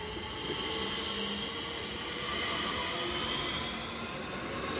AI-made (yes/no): no